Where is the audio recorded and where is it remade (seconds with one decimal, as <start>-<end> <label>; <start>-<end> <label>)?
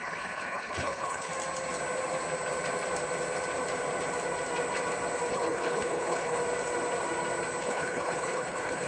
0.0-1.3 remade; 1.3-5.3 recorded; 5.3-6.4 remade; 6.4-7.6 recorded; 7.6-8.9 remade